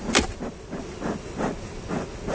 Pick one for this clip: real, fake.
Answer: real